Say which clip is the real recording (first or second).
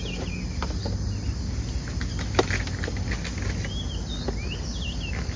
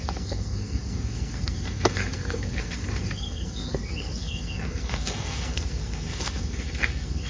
first